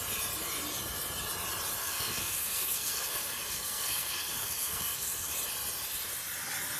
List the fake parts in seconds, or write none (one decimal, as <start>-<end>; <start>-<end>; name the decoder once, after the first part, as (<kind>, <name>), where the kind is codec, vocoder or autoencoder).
1.8-5.3 (codec, SNAC)